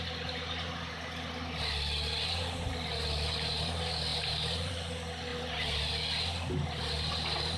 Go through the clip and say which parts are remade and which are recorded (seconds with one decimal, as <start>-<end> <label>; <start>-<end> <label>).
0.0-4.1 recorded; 4.1-4.7 remade; 4.7-5.3 recorded; 5.3-5.8 remade; 5.8-7.6 recorded

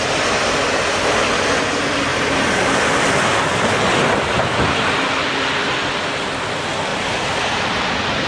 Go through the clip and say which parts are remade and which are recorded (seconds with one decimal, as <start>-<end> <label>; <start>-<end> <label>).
0.0-2.1 recorded; 2.1-2.7 remade; 2.7-6.9 recorded; 6.9-7.8 remade; 7.8-8.3 recorded